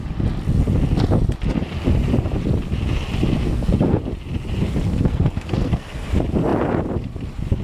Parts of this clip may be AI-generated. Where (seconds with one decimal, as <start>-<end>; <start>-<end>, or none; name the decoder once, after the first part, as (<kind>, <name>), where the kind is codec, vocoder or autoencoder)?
3.4-4.0 (codec, SNAC); 4.9-6.1